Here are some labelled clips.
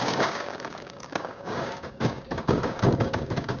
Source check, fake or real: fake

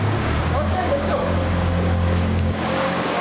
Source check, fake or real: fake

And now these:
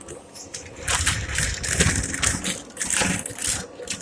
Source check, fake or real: real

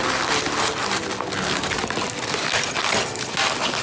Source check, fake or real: real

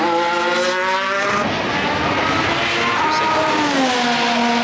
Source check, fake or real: real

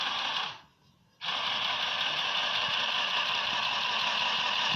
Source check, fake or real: real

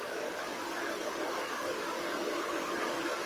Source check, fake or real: fake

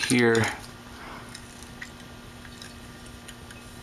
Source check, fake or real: real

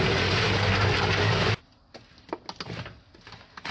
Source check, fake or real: real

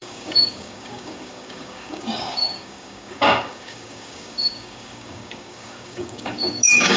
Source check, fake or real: fake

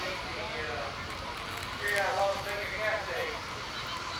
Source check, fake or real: real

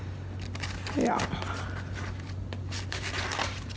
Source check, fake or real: real